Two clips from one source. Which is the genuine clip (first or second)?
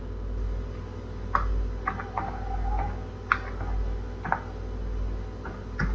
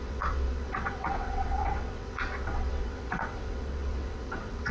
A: first